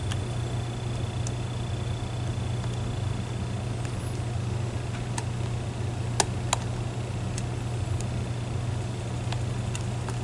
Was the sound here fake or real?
real